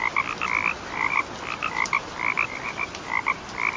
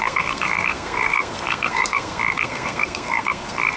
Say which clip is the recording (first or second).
first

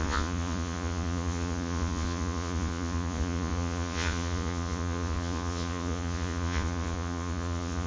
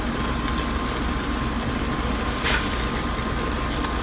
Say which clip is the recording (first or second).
second